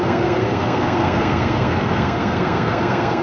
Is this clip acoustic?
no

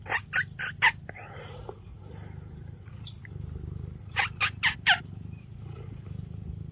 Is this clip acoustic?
yes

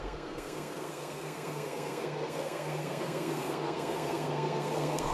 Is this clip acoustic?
no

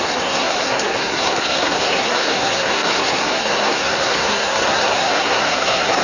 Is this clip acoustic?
no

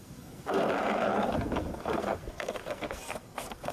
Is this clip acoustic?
no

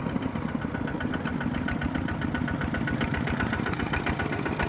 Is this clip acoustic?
yes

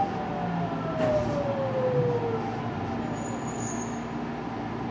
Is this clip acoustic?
yes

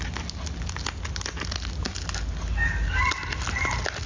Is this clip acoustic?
yes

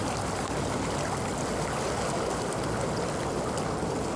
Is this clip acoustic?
yes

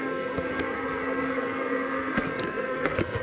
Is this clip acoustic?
no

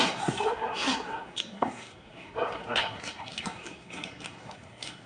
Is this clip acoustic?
no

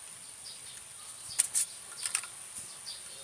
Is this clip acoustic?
yes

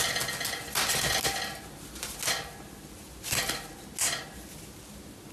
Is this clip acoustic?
yes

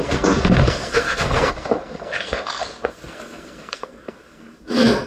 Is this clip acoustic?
no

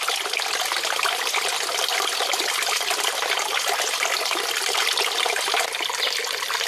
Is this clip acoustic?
yes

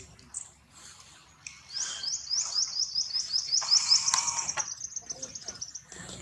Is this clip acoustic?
yes